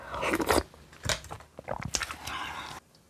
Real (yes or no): yes